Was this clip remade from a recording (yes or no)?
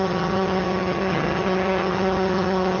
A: yes